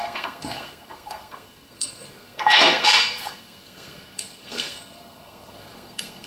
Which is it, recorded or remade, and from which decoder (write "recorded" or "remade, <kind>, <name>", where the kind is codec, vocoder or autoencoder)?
remade, codec, SNAC